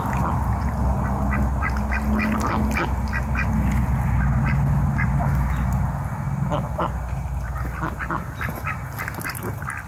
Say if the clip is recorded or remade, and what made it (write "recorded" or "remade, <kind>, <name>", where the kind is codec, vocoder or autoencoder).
recorded